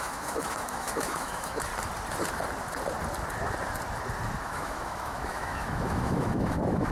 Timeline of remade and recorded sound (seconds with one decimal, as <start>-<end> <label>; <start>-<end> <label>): 0.0-1.7 remade; 1.7-4.4 recorded; 4.4-6.9 remade